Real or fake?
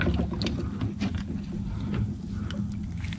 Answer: real